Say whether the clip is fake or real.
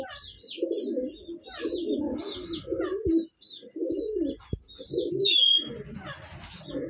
real